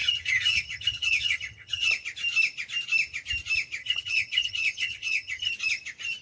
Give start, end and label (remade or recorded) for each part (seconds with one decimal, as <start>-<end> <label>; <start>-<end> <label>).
0.0-1.9 remade; 1.9-3.8 recorded; 3.8-5.5 remade; 5.5-6.2 recorded